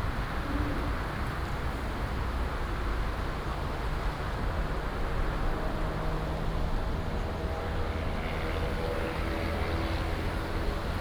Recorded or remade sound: recorded